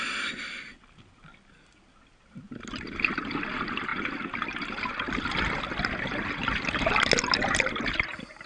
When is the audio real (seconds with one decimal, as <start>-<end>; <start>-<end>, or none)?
0.0-8.5